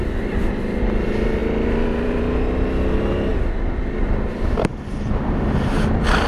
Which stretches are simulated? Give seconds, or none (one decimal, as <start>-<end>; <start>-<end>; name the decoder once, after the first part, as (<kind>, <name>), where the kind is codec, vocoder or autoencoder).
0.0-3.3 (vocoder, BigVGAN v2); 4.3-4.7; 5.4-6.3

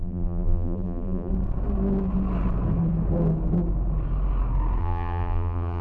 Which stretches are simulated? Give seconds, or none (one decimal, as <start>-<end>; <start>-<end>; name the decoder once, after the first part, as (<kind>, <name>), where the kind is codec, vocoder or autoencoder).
0.0-1.3 (vocoder, BigVGAN v2); 4.8-5.8

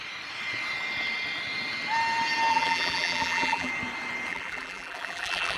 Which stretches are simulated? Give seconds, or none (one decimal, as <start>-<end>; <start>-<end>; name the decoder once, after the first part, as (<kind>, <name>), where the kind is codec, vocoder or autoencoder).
2.5-3.7 (vocoder, BigVGAN v2); 4.3-5.6